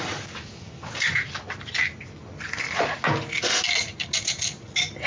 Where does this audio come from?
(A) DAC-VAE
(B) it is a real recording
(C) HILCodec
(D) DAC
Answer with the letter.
B